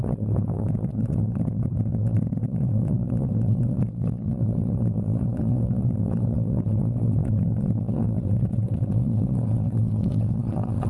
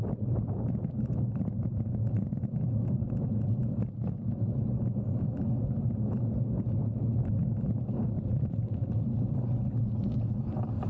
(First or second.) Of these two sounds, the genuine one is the second